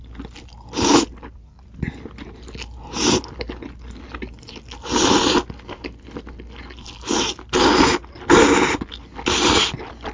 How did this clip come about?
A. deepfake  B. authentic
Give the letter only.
B